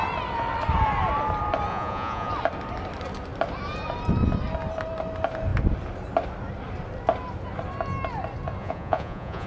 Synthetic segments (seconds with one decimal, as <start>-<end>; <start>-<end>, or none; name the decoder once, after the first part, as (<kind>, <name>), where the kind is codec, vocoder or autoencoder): 1.7-2.3 (vocoder, Vocos); 8.6-9.5